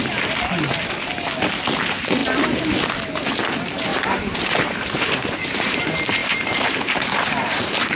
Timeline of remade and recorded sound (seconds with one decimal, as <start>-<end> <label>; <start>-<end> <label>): 0.0-3.9 recorded; 3.9-5.8 remade; 5.8-6.2 recorded; 6.2-8.0 remade